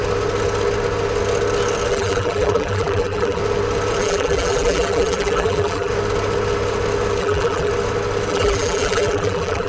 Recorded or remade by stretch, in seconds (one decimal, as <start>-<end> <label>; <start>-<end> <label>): 0.0-1.9 recorded; 1.9-3.4 remade; 3.4-4.0 recorded; 4.0-5.9 remade; 5.9-7.2 recorded; 7.2-7.7 remade; 7.7-8.3 recorded; 8.3-9.7 remade